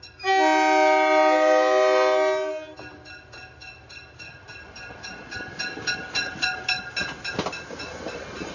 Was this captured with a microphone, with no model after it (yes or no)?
yes